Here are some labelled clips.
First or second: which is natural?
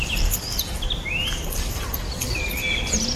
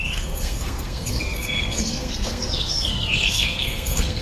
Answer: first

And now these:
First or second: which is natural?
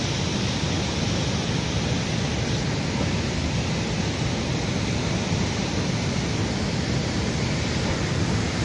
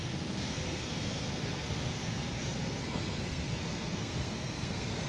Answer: first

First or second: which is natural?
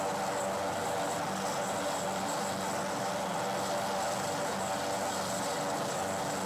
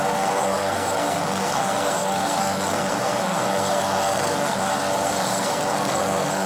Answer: first